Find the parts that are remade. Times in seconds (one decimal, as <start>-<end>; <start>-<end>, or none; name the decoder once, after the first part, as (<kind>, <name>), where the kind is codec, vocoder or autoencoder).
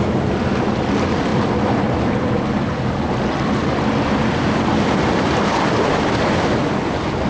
none